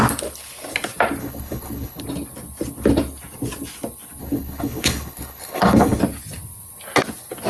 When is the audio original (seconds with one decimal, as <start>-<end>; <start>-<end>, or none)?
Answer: 0.0-1.2; 2.0-4.2; 6.0-7.5